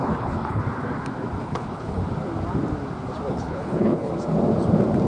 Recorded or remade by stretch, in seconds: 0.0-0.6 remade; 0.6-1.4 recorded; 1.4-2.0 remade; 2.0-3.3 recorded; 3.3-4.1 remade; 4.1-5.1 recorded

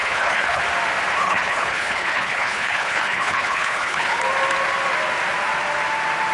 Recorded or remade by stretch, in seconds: 0.0-0.6 remade; 0.6-1.2 recorded; 1.2-4.2 remade; 4.2-6.3 recorded

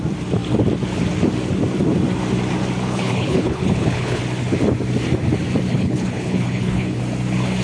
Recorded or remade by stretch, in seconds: 0.0-2.9 recorded; 2.9-4.2 remade; 4.2-5.7 recorded; 5.7-7.0 remade; 7.0-7.6 recorded